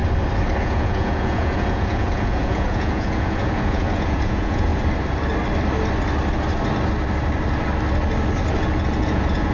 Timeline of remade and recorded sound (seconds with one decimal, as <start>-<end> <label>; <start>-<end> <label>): 0.0-0.6 recorded; 0.6-4.7 remade; 4.7-9.0 recorded; 9.0-9.5 remade